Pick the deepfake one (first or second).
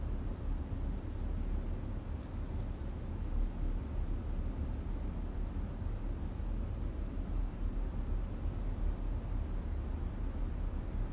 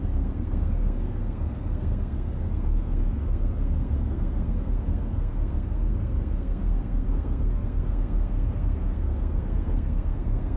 second